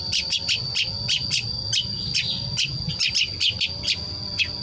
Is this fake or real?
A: real